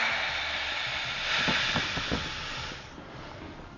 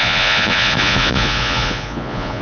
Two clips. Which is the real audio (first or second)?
first